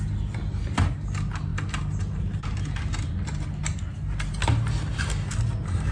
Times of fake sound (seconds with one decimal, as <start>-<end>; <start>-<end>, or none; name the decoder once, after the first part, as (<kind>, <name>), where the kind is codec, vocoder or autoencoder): none